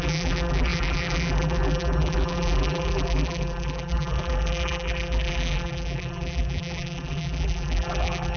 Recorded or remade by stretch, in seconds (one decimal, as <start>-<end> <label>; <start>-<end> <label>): 0.0-8.4 remade